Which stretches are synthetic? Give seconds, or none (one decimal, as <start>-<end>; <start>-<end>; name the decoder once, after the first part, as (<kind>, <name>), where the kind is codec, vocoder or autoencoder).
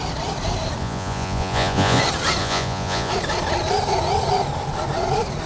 0.8-2.0 (vocoder, Vocos); 2.4-3.1